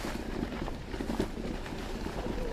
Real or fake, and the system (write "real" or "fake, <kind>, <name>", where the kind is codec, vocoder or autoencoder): real